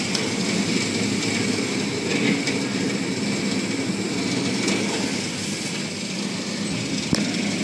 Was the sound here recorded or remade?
recorded